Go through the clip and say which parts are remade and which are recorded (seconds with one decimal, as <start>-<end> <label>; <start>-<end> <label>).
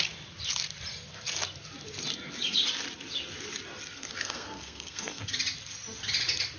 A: 0.0-3.9 recorded; 3.9-5.2 remade; 5.2-6.6 recorded